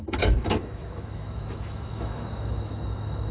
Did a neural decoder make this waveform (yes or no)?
yes